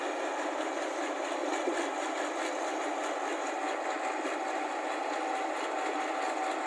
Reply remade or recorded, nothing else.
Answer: recorded